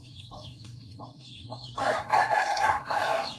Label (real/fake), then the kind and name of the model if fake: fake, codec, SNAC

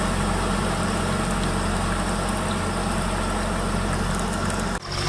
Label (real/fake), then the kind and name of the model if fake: real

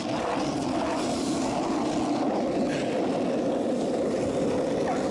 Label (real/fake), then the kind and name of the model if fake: real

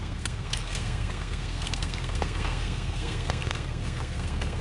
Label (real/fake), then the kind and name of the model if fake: fake, codec, SNAC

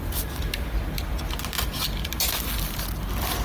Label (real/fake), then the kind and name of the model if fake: real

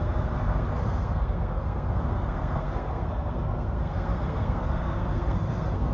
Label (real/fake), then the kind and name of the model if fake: fake, codec, SNAC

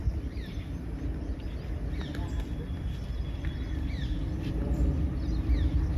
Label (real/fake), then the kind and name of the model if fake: real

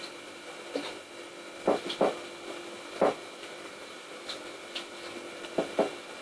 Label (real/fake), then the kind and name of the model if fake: real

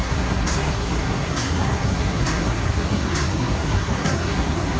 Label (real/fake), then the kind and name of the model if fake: fake, codec, SNAC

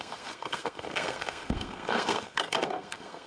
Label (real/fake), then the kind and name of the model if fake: fake, codec, SNAC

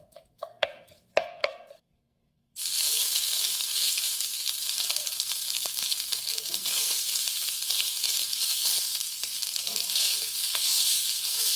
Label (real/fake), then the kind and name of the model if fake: fake, codec, SNAC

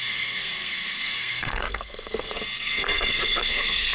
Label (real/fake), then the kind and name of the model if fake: fake, codec, SNAC